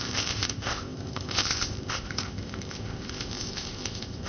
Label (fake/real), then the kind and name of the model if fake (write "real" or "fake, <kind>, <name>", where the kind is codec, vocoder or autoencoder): fake, codec, ZipCodec